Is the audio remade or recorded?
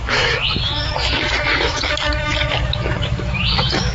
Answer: remade